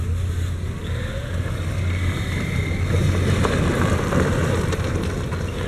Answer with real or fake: real